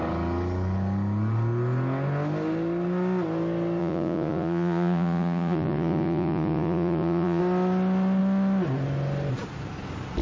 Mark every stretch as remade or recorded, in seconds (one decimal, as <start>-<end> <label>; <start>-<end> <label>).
0.0-3.8 recorded; 3.8-7.4 remade; 7.4-10.2 recorded